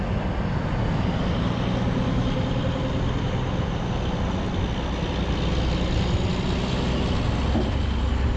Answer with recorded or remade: recorded